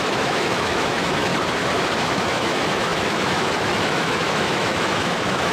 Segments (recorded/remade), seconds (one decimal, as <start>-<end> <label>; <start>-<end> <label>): 0.0-1.3 remade; 1.3-2.1 recorded; 2.1-5.5 remade